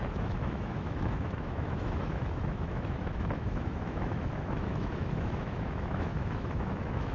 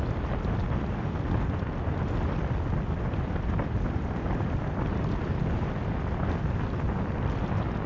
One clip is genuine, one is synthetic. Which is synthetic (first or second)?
first